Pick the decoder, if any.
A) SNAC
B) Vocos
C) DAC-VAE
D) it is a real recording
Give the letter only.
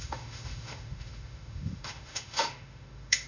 C